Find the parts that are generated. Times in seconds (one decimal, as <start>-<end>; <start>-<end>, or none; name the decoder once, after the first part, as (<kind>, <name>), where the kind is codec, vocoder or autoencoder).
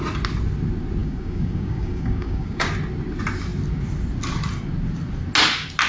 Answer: 1.0-2.7 (codec, DAC)